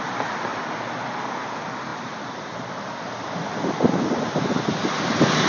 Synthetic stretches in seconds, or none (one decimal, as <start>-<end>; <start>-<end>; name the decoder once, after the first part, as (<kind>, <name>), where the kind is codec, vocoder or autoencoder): 1.9-5.5 (vocoder, BigVGAN v2)